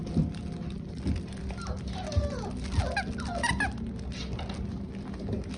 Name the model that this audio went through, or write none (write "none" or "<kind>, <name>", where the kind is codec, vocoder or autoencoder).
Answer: none